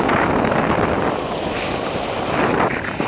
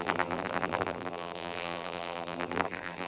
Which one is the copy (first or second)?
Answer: second